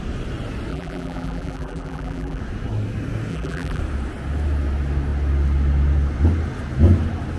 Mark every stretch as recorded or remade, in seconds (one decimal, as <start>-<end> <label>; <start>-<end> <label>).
0.0-0.7 recorded; 0.7-2.4 remade; 2.4-3.3 recorded; 3.3-3.8 remade; 3.8-7.4 recorded